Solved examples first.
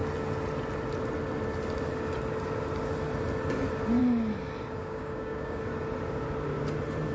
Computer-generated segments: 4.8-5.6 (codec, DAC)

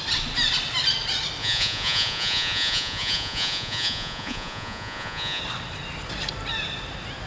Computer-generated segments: 1.4-5.4 (vocoder, Vocos)

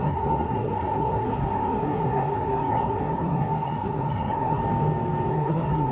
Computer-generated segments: 0.0-4.6 (codec, SNAC); 5.3-5.9

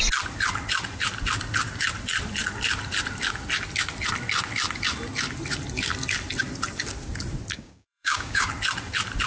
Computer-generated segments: 7.5-8.5 (codec, DAC)

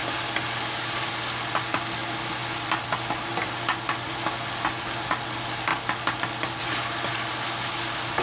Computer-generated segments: none